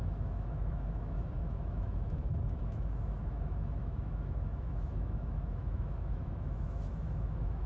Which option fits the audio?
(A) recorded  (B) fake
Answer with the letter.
B